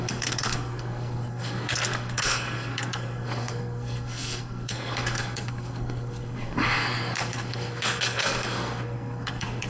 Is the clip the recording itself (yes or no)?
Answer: no